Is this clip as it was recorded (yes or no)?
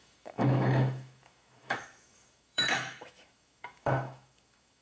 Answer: no